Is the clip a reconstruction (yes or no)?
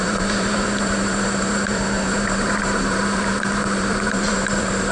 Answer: yes